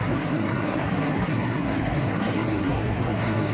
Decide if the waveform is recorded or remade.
remade